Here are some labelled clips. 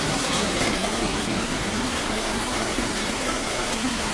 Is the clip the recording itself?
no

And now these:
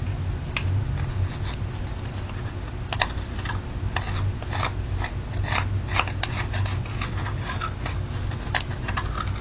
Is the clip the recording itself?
yes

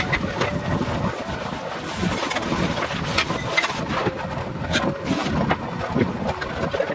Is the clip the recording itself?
yes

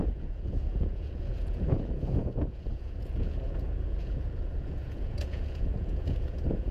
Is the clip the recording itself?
no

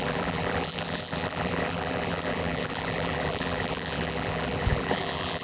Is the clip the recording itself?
no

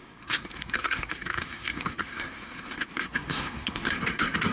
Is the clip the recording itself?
no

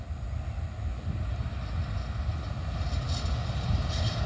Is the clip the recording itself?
yes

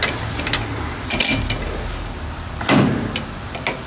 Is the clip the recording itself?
yes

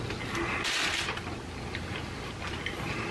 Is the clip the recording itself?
yes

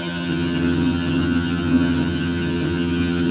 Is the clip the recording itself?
no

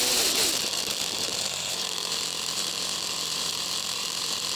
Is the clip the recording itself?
no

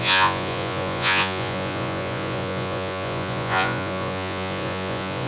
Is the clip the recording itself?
no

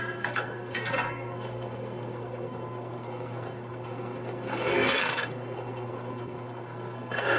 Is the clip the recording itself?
no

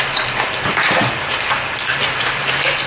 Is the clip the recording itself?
yes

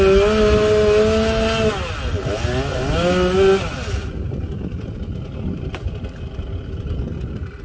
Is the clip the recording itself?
yes